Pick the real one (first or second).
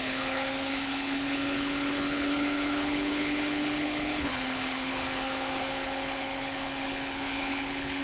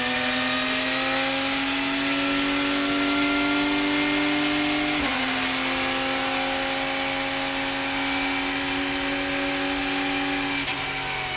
second